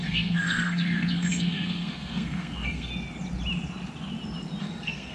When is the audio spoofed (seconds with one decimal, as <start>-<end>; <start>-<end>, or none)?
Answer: 0.0-2.9; 4.6-5.1